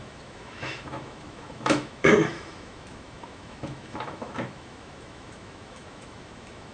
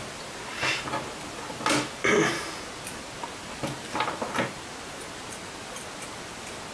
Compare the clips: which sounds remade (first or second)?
first